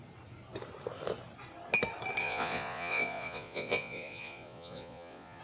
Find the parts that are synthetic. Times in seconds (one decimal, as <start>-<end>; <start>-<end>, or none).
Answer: 2.2-5.4